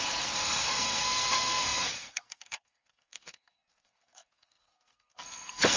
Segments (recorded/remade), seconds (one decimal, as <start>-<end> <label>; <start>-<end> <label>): 0.0-5.8 remade